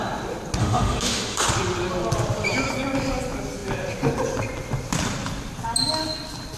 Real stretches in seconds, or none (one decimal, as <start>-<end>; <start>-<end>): 0.0-0.6; 1.5-6.6